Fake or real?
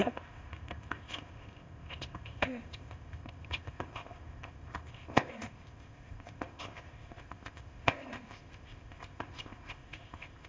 fake